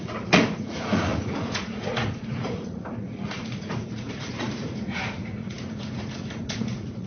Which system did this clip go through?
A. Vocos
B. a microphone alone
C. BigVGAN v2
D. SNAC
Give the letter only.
A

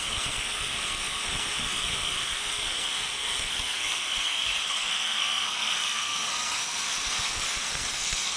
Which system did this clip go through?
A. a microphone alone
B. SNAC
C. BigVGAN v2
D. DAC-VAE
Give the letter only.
B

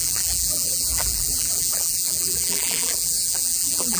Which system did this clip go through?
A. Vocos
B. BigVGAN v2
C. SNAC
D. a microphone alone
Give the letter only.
B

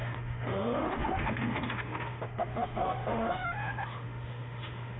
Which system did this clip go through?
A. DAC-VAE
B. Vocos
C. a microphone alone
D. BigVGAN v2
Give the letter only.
A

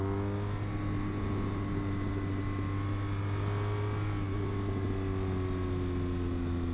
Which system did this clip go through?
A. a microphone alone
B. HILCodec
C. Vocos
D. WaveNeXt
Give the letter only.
A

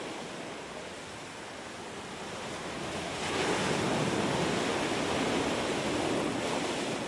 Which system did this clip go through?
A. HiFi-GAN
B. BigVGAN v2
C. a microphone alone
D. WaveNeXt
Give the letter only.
C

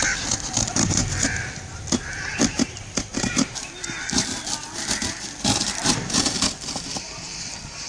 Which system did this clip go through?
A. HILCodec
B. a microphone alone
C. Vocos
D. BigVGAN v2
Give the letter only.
D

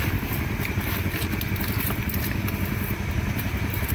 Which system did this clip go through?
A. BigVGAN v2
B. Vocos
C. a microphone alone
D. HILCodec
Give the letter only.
C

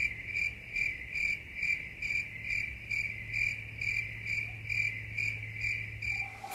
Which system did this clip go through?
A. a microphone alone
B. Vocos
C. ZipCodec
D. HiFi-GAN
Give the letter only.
A